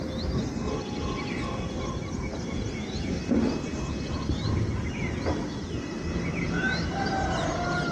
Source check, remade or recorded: recorded